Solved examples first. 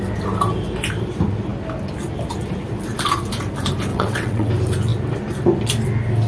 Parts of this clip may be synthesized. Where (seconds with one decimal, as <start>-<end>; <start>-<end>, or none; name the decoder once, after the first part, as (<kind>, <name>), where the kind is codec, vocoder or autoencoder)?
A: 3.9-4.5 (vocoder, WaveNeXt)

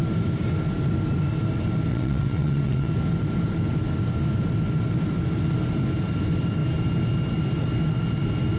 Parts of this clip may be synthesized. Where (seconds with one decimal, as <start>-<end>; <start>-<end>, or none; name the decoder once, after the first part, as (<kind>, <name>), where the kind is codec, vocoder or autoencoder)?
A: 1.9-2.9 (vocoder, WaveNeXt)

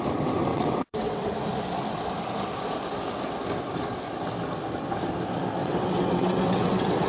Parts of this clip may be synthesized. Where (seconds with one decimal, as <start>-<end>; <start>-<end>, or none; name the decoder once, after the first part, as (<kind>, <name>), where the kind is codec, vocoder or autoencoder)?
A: 0.5-1.3 (vocoder, WaveNeXt); 5.6-7.1